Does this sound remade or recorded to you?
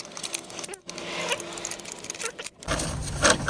recorded